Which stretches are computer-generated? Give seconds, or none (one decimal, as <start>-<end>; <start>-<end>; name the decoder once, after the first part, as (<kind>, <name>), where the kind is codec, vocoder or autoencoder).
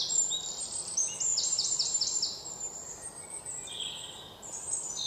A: 1.3-3.8 (vocoder, BigVGAN v2)